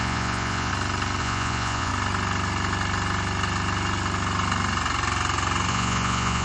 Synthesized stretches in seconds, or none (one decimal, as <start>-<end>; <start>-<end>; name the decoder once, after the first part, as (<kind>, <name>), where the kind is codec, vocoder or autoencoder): 0.0-0.7 (vocoder, Vocos); 1.2-1.9; 5.7-6.4